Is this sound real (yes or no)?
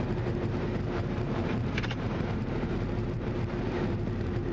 no